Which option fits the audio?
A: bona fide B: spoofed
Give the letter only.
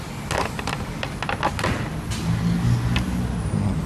A